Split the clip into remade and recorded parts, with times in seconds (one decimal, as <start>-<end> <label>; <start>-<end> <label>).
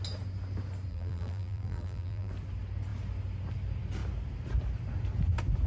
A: 0.0-0.9 recorded; 0.9-2.3 remade; 2.3-5.7 recorded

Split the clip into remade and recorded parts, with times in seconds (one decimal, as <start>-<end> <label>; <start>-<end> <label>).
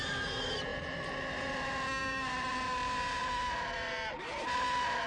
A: 0.0-0.7 recorded; 0.7-1.6 remade; 1.6-2.0 recorded; 2.0-5.1 remade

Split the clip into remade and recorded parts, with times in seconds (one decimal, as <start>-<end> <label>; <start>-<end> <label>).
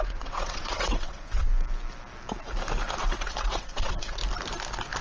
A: 0.0-1.5 remade; 1.5-3.0 recorded; 3.0-4.2 remade; 4.2-5.0 recorded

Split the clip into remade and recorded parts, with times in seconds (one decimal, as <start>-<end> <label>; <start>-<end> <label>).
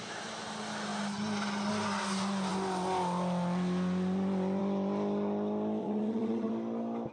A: 0.0-5.8 recorded; 5.8-6.5 remade; 6.5-7.1 recorded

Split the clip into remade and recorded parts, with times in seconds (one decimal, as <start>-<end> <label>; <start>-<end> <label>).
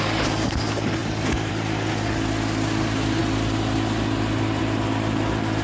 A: 0.0-5.6 recorded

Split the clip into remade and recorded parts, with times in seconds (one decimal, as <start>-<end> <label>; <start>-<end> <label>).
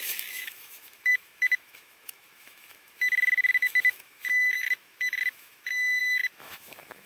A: 0.0-7.1 remade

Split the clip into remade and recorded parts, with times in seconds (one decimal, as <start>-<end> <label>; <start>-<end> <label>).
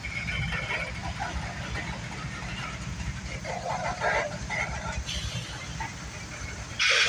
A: 0.0-7.1 recorded